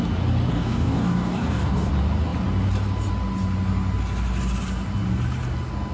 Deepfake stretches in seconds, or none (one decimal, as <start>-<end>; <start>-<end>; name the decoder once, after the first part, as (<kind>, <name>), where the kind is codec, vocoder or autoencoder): 0.5-1.9 (codec, DAC)